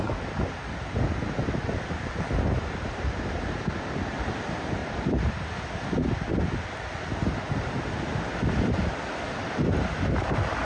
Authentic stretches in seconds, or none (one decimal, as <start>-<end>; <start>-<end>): 0.0-4.8; 5.7-10.6